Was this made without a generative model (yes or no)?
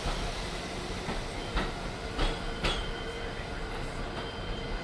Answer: yes